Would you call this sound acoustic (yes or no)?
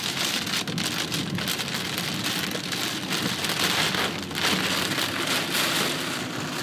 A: yes